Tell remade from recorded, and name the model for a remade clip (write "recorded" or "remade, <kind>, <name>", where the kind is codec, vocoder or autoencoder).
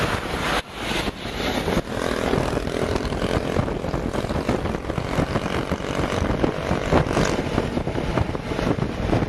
recorded